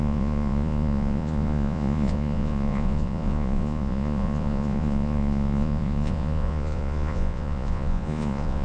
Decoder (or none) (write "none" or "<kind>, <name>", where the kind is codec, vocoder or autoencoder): vocoder, Vocos